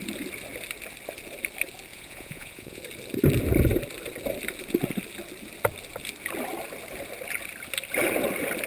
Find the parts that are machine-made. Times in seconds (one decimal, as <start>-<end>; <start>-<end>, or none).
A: 1.9-2.8